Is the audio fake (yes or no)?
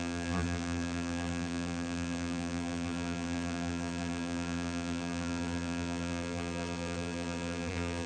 yes